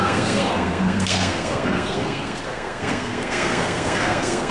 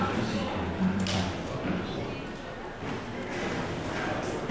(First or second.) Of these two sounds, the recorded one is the second